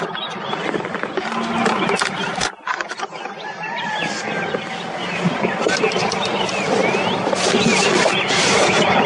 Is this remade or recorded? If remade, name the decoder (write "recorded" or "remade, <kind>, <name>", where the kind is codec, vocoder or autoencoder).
recorded